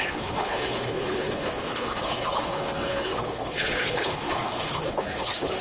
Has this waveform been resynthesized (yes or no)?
yes